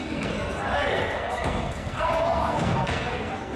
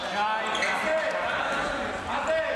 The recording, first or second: second